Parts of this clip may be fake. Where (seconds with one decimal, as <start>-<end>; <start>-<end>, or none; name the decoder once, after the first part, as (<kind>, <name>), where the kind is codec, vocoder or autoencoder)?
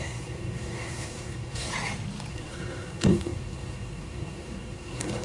0.0-1.7 (codec, SNAC); 2.3-5.2